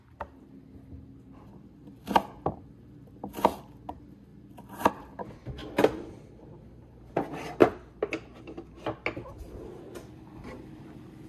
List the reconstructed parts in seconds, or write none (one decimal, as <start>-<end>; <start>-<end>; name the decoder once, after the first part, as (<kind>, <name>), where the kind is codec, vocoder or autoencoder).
4.3-4.9 (vocoder, BigVGAN v2); 5.6-6.2